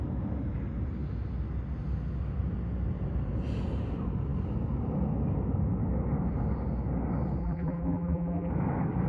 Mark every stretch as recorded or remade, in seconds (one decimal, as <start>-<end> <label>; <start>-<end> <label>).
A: 0.0-7.4 recorded; 7.4-8.5 remade; 8.5-9.1 recorded